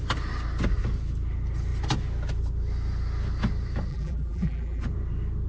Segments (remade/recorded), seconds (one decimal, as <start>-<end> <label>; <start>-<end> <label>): 0.0-3.9 recorded; 3.9-4.8 remade; 4.8-5.5 recorded